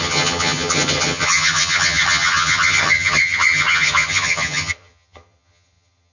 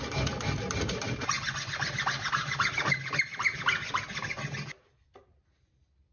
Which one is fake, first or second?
first